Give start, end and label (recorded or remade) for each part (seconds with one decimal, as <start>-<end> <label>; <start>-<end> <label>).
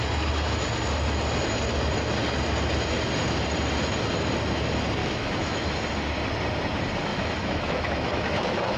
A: 0.0-5.0 recorded; 5.0-5.7 remade; 5.7-7.1 recorded; 7.1-8.8 remade